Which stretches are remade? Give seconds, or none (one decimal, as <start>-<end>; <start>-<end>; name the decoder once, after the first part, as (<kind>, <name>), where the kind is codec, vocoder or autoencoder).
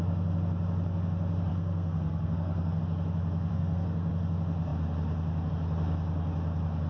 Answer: 1.5-2.8 (codec, SNAC); 3.5-4.1